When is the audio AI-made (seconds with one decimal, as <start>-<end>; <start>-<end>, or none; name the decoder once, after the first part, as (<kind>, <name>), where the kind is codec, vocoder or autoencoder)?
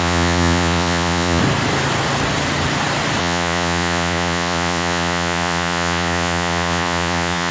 0.0-1.4 (vocoder, Vocos); 3.2-7.5